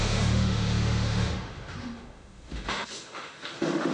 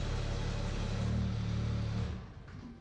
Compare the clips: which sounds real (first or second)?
second